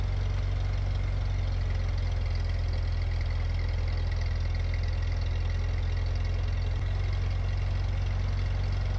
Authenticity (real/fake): real